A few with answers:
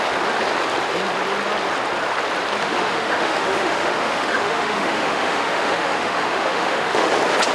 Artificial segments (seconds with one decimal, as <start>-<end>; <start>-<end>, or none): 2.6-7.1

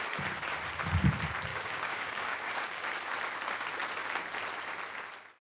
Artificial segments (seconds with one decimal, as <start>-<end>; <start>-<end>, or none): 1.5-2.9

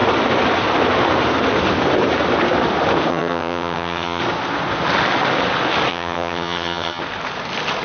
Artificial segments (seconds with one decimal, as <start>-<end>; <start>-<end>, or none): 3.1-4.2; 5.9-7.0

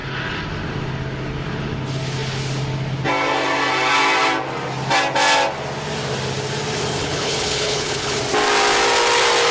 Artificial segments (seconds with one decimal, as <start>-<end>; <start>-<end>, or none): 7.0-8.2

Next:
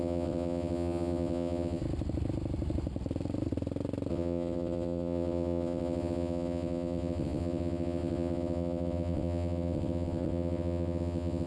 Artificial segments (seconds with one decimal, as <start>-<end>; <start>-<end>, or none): 0.0-1.8; 4.1-11.5